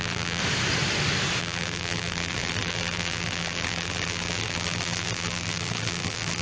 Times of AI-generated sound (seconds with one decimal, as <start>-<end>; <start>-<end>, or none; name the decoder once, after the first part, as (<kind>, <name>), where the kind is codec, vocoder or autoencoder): 0.0-0.4 (vocoder, BigVGAN v2); 1.4-6.4